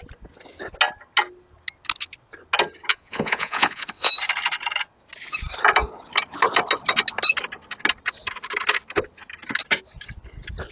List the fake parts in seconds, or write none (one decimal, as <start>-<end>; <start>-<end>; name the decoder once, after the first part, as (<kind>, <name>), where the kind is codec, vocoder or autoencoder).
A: 2.9-4.1 (vocoder, Vocos)